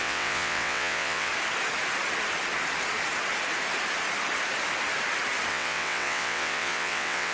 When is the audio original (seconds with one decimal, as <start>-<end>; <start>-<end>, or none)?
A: 1.3-5.5